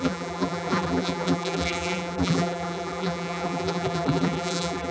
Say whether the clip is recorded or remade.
remade